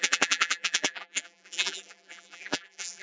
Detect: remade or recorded remade